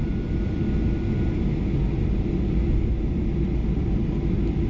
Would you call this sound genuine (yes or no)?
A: yes